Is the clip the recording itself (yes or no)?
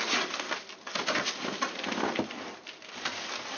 no